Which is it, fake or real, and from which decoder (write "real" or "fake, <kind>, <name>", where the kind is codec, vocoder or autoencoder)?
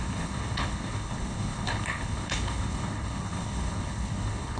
fake, codec, HILCodec